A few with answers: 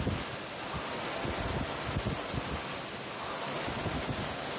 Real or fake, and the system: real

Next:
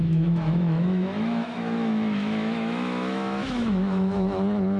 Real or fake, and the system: fake, autoencoder, DAC-VAE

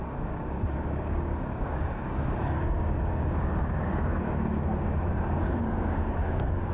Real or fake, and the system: fake, codec, DAC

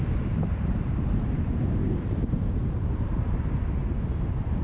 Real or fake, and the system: fake, vocoder, BigVGAN v2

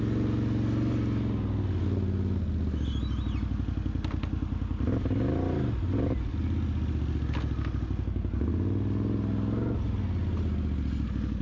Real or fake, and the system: real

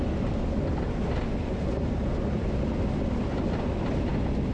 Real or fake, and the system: real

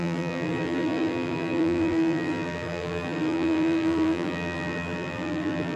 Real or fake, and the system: fake, vocoder, BigVGAN v2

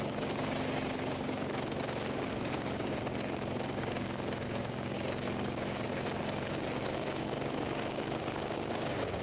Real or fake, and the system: fake, codec, DAC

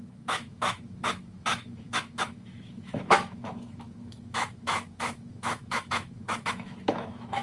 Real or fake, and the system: fake, autoencoder, DAC-VAE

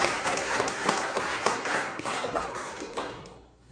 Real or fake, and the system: fake, codec, SNAC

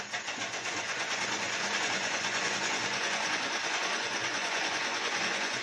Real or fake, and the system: fake, vocoder, Vocos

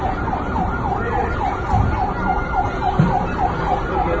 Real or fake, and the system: real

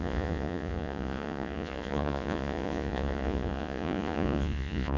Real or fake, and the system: fake, vocoder, Vocos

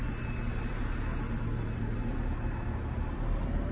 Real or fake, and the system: real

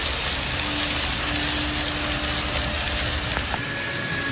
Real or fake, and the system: real